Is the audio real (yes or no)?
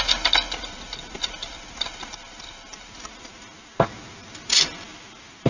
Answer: yes